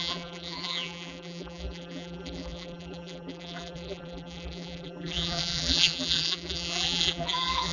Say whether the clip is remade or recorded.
remade